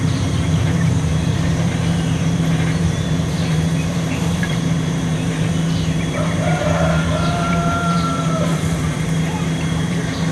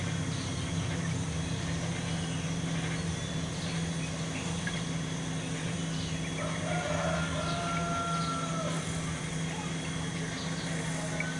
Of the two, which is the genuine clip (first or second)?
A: second